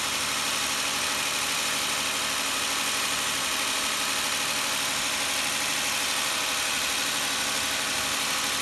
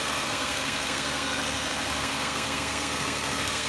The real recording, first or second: first